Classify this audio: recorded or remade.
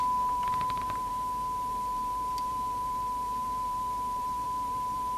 remade